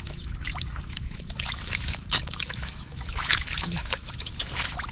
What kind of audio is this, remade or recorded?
remade